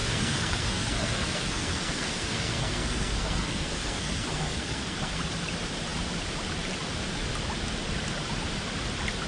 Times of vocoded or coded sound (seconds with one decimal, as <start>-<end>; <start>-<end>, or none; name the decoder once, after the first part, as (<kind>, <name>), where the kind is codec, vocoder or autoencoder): 0.0-5.2 (codec, SNAC)